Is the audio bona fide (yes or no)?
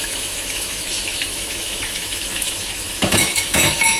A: no